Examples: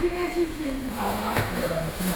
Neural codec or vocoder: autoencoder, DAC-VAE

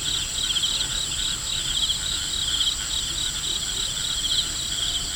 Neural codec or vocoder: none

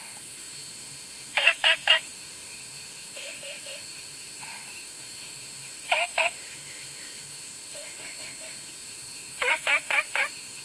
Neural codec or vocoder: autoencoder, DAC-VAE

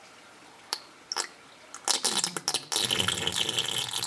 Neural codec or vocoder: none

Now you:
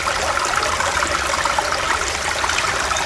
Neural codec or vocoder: none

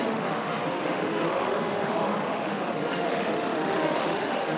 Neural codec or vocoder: autoencoder, DAC-VAE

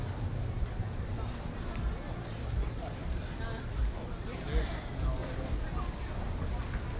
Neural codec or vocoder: none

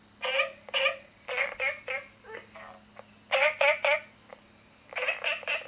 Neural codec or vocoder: none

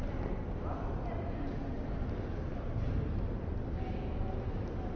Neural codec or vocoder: none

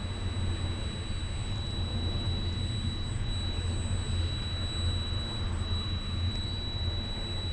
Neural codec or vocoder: none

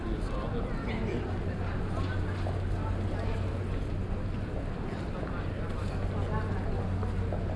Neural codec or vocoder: none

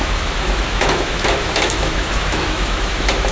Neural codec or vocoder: autoencoder, DAC-VAE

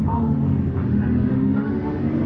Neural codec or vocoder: autoencoder, DAC-VAE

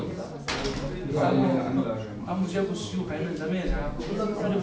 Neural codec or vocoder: none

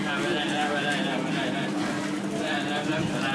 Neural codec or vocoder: none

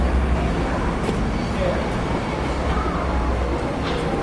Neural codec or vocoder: none